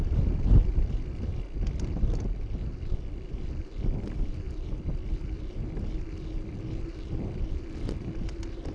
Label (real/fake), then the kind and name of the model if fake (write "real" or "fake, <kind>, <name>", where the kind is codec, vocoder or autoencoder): real